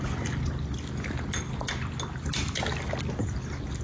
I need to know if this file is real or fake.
real